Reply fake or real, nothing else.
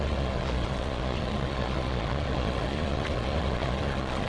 fake